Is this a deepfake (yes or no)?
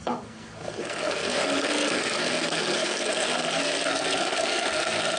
yes